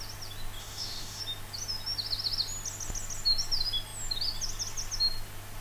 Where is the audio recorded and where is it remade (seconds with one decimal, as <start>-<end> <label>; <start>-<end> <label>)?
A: 0.0-0.6 recorded; 0.6-1.2 remade; 1.2-5.6 recorded